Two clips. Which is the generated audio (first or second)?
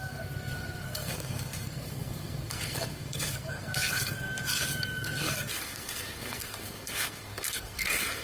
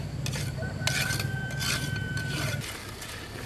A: first